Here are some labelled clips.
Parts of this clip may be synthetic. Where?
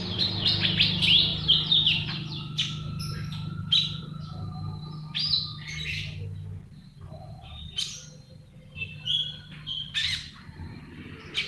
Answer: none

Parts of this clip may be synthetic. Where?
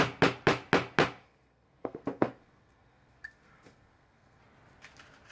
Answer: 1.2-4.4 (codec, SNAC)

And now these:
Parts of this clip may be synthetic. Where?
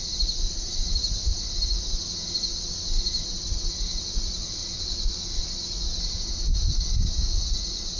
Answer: none